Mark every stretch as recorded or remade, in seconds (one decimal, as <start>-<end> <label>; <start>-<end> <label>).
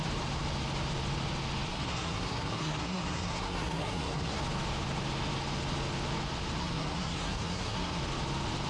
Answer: 0.0-1.7 recorded; 1.7-4.4 remade; 4.4-6.6 recorded; 6.6-8.0 remade; 8.0-8.7 recorded